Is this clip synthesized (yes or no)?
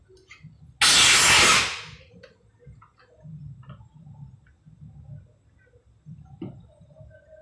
no